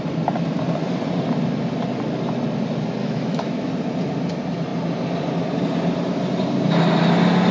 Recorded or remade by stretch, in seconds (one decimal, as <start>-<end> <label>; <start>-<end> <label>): 0.0-3.0 recorded; 3.0-3.7 remade; 3.7-7.5 recorded